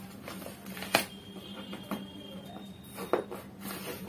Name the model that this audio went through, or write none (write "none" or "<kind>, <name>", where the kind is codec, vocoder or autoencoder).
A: none